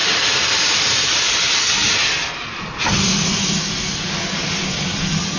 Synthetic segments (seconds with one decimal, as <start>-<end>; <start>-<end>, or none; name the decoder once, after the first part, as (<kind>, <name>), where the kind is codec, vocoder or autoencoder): 0.0-1.5 (vocoder, BigVGAN v2)